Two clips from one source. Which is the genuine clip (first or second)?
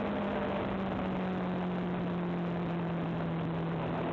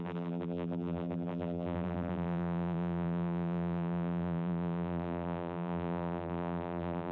first